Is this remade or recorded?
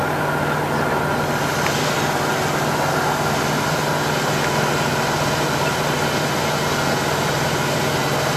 recorded